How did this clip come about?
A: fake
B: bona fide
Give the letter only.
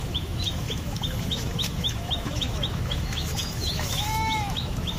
A